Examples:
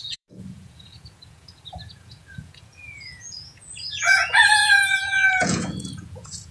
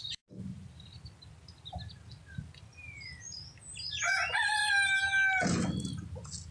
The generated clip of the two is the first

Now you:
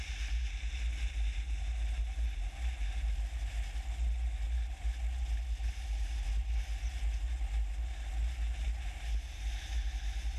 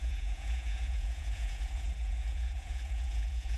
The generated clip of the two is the second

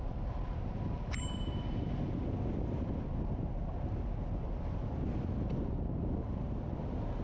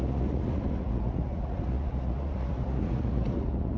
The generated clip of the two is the second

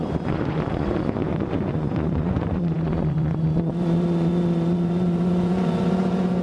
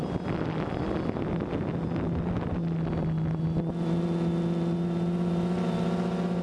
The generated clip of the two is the first